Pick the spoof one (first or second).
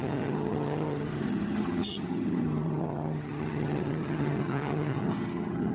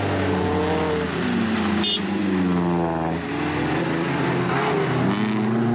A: first